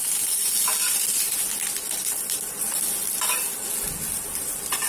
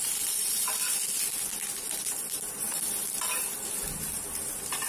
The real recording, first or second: first